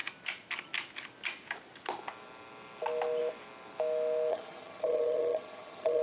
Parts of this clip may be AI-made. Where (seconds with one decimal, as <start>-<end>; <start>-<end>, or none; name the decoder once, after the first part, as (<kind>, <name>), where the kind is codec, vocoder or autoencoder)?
4.3-6.0 (vocoder, HiFi-GAN)